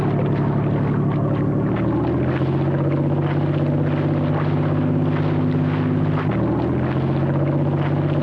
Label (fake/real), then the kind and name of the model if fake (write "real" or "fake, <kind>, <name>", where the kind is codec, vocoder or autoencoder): real